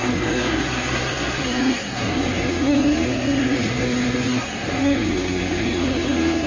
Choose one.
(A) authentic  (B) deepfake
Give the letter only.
B